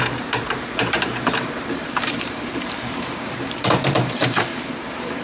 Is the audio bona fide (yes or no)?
no